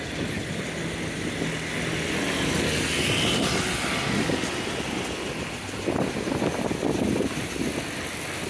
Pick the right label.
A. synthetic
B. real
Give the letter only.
B